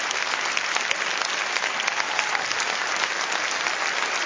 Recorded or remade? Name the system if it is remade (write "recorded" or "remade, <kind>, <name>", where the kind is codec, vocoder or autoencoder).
recorded